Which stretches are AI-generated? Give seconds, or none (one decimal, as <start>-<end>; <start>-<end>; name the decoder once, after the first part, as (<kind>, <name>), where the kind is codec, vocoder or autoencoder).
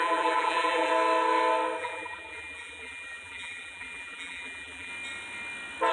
0.0-0.9 (vocoder, BigVGAN v2); 1.8-4.9